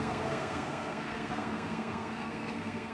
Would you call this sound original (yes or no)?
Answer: no